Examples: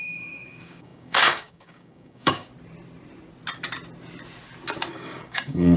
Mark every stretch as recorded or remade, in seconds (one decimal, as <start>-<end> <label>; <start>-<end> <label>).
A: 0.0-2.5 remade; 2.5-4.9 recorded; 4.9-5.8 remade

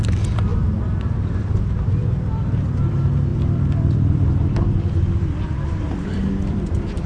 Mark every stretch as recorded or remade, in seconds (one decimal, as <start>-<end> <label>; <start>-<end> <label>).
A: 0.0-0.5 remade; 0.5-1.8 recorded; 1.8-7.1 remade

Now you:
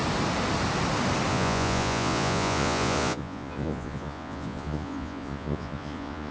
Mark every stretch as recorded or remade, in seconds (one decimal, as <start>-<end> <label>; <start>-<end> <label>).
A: 0.0-1.3 recorded; 1.3-6.3 remade

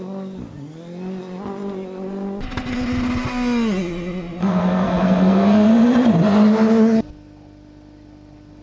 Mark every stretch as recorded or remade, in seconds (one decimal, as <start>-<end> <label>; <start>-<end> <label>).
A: 0.0-4.4 recorded; 4.4-5.7 remade; 5.7-8.6 recorded